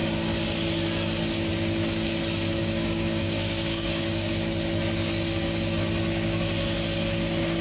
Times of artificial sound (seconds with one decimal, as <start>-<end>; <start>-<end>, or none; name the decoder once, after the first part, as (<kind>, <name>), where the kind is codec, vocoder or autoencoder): 2.6-4.3 (codec, DAC)